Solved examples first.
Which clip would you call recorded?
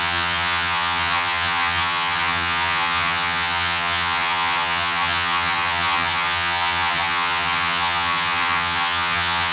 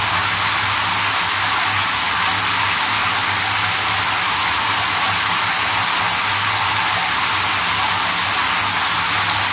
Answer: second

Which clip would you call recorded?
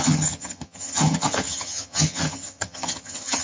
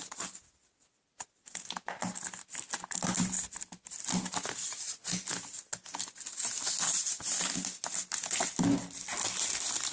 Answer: second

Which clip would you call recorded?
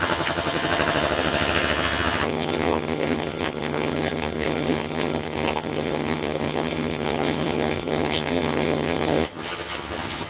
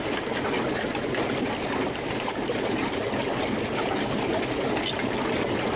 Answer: second